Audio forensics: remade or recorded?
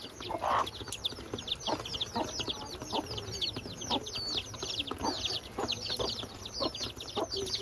recorded